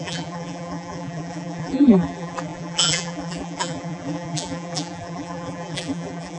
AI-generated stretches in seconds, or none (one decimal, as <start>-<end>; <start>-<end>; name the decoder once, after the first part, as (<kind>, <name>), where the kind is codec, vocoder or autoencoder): 0.0-6.4 (vocoder, BigVGAN v2)